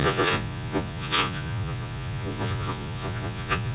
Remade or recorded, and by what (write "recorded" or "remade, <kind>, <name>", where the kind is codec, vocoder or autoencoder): remade, vocoder, Vocos